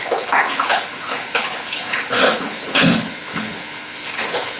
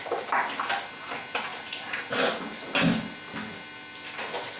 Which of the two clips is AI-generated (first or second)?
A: first